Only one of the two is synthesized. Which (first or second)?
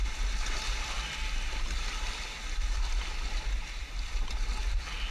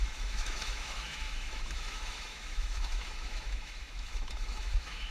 second